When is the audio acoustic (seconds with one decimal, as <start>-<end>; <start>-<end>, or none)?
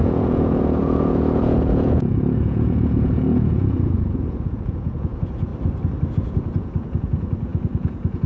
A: 5.5-6.1